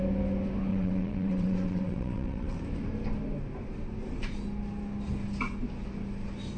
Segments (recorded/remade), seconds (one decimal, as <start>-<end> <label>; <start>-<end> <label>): 0.0-0.7 recorded; 0.7-2.6 remade; 2.6-6.6 recorded